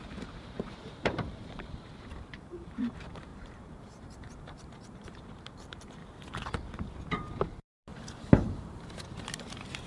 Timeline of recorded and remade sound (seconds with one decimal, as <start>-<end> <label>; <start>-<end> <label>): 0.0-6.0 remade; 6.0-7.4 recorded; 7.4-9.9 remade